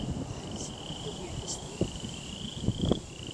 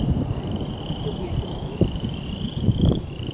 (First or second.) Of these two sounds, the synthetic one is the second